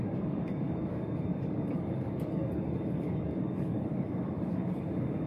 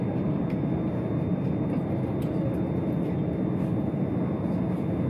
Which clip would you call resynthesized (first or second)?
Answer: first